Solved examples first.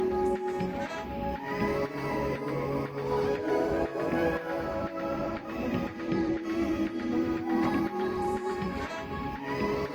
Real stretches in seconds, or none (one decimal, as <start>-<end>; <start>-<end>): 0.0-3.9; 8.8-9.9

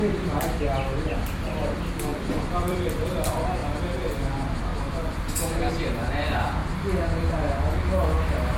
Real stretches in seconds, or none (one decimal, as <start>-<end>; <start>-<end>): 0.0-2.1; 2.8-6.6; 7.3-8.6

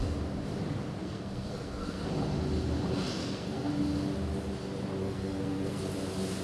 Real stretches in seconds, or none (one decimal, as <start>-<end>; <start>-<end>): 0.0-1.0; 2.1-3.2; 3.7-5.0; 5.8-6.4

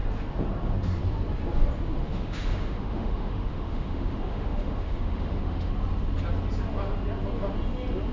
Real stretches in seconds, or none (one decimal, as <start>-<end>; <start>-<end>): 0.0-2.0; 5.7-8.1